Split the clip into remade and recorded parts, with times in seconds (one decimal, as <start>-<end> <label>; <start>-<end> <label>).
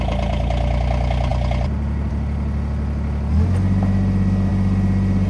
0.0-5.3 recorded